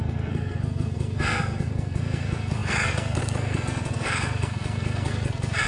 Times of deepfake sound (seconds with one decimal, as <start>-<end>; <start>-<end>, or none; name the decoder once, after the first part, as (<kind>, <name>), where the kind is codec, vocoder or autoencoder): 0.0-5.7 (codec, SNAC)